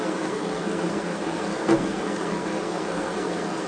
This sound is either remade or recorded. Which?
remade